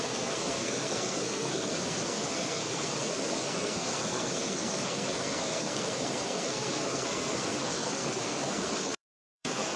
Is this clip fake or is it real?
fake